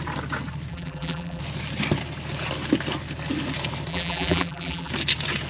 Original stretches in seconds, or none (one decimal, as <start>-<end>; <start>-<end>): 0.0-0.7; 1.4-3.9; 4.9-5.5